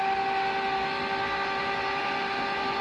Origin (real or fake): real